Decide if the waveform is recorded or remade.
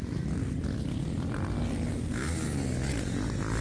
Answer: recorded